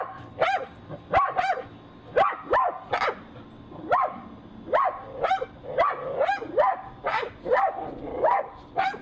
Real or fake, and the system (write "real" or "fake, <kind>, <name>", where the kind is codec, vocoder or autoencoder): real